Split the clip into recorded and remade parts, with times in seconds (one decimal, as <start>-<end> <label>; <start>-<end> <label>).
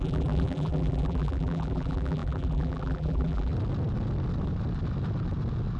0.0-3.5 remade; 3.5-5.8 recorded